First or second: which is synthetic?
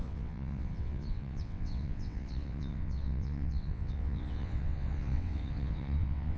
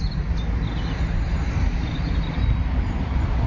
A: first